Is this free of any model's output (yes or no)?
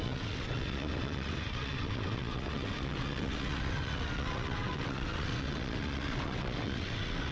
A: no